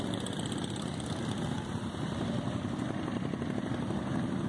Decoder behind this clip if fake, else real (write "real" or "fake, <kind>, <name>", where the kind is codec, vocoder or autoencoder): fake, vocoder, BigVGAN v2